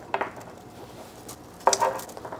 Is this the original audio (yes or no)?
yes